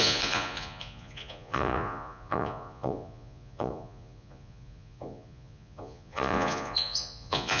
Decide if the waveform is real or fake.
fake